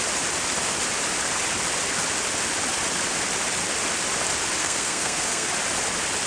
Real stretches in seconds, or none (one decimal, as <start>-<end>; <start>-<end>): 0.0-4.6; 5.5-6.3